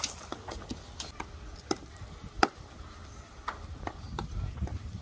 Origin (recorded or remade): recorded